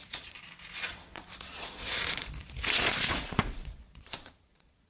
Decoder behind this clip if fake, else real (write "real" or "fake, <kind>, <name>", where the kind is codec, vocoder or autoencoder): fake, vocoder, Vocos